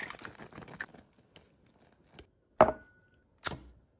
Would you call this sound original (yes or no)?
yes